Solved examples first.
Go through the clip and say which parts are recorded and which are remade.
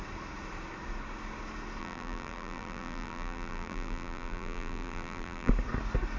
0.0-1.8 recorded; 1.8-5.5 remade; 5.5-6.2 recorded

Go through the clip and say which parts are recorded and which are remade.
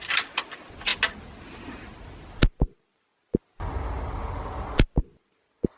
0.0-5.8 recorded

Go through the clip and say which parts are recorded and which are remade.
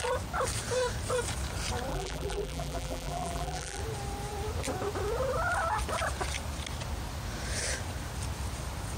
0.0-1.9 recorded; 1.9-3.8 remade; 3.8-9.0 recorded